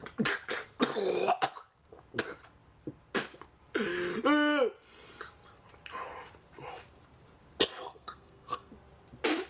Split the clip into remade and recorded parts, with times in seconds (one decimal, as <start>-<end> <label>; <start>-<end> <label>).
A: 0.0-7.7 recorded; 7.7-8.7 remade; 8.7-9.5 recorded